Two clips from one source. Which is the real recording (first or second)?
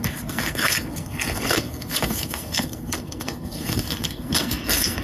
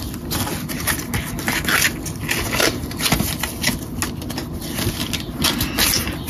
second